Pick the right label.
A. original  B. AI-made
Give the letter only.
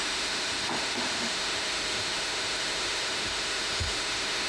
B